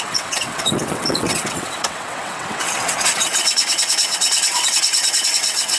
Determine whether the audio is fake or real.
fake